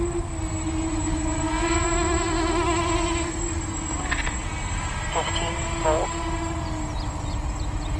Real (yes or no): yes